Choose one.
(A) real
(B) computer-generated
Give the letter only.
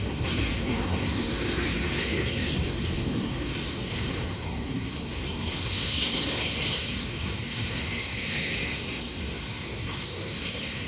B